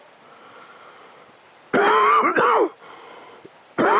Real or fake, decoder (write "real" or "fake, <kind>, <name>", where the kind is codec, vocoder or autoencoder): real